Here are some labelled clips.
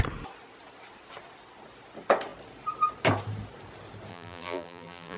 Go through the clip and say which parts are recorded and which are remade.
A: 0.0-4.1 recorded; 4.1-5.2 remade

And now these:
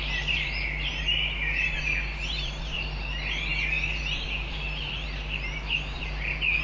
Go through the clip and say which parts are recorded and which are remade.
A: 0.0-3.5 remade; 3.5-4.0 recorded; 4.0-6.6 remade

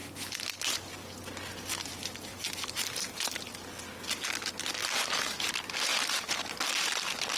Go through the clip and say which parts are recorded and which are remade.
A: 0.0-2.3 recorded; 2.3-3.1 remade; 3.1-4.8 recorded; 4.8-5.5 remade; 5.5-5.9 recorded; 5.9-6.4 remade; 6.4-7.4 recorded

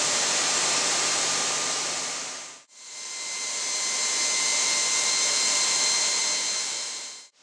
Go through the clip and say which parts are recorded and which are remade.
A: 0.0-7.4 remade